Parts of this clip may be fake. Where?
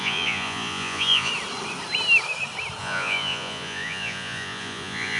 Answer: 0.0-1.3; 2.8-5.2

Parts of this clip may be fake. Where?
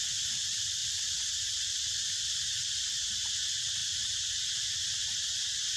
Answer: 3.8-4.7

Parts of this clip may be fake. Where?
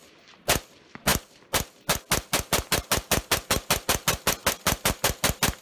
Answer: none